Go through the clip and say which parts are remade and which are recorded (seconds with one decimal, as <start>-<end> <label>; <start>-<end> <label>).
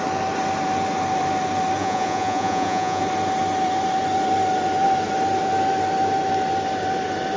0.0-1.8 recorded; 1.8-3.0 remade; 3.0-7.4 recorded